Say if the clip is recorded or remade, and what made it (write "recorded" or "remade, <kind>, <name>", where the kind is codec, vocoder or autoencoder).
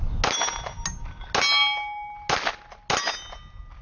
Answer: recorded